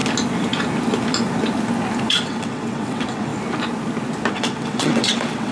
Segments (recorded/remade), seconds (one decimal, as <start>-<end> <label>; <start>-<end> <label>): 0.0-2.1 recorded; 2.1-3.3 remade; 3.3-4.3 recorded; 4.3-5.5 remade